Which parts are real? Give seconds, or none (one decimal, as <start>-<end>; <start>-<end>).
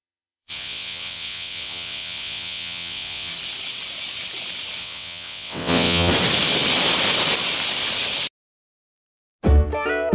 3.3-4.8; 6.1-10.1